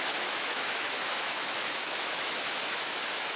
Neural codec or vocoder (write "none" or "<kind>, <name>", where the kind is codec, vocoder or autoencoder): autoencoder, DAC-VAE